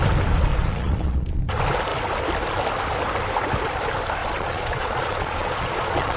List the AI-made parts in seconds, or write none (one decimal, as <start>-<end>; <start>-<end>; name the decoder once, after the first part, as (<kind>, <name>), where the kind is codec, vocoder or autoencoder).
0.5-1.4 (vocoder, Vocos); 4.2-6.2